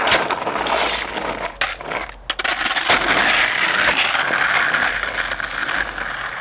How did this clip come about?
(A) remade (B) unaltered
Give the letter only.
B